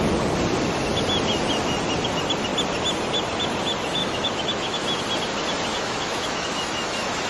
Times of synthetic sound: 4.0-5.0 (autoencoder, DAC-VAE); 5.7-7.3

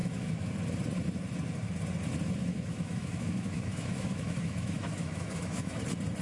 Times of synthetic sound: 0.0-0.5 (autoencoder, DAC-VAE); 2.4-5.8

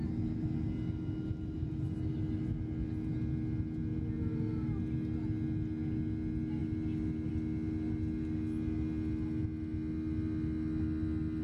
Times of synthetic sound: none

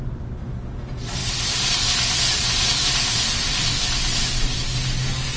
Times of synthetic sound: none

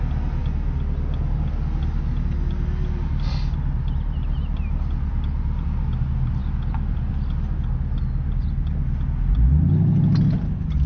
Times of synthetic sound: none

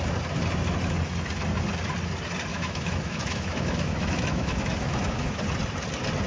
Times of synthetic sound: 2.5-5.4 (autoencoder, DAC-VAE)

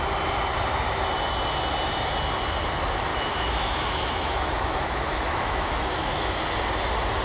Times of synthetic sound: 3.1-6.4 (autoencoder, DAC-VAE)